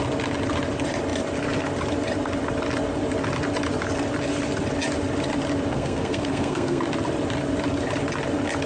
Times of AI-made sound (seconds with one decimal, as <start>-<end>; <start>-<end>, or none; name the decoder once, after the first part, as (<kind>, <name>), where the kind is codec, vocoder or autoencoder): 5.7-6.8 (codec, SNAC)